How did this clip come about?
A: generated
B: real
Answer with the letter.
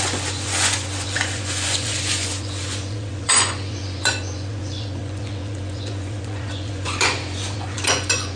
A